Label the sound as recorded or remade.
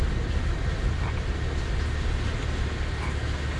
recorded